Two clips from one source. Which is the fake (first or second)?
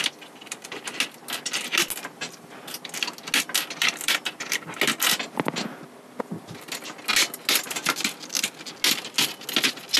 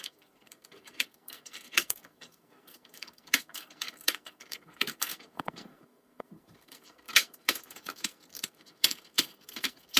second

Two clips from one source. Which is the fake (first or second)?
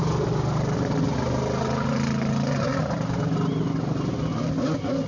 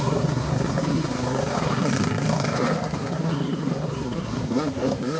second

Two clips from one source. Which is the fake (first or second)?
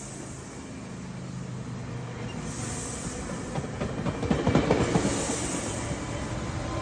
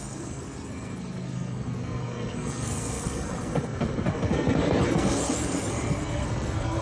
second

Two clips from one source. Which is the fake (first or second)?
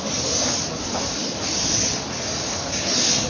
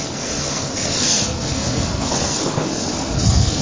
second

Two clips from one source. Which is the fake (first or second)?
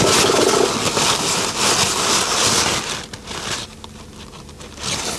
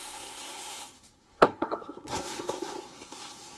second